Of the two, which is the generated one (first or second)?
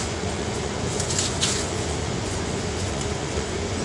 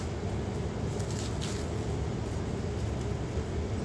first